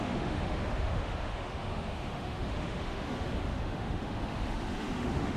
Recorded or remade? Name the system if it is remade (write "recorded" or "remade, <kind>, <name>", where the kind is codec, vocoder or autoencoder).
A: remade, autoencoder, DAC-VAE